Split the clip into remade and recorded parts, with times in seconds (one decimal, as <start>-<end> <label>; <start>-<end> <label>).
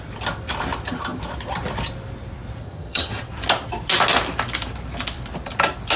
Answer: 0.0-2.6 recorded; 2.6-3.2 remade; 3.2-6.0 recorded